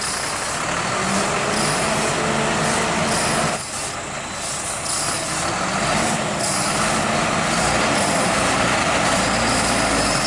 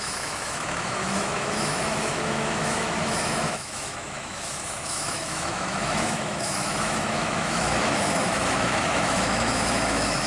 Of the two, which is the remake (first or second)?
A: second